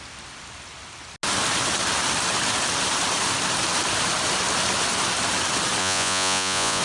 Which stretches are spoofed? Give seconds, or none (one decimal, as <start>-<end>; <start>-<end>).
5.8-6.8